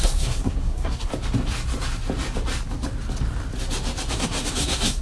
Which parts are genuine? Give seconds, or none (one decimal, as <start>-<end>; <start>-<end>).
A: 1.1-4.1